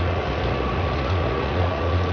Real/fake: fake